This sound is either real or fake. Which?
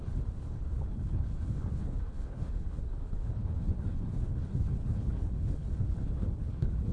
fake